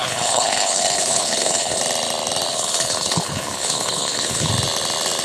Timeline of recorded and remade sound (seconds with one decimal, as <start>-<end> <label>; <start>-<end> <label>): 0.0-1.8 remade; 1.8-2.5 recorded; 2.5-4.5 remade; 4.5-5.2 recorded